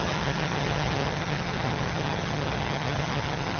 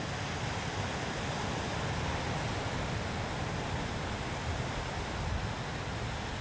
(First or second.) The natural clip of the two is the second